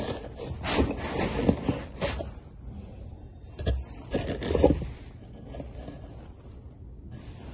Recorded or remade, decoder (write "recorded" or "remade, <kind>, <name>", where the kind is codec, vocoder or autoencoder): recorded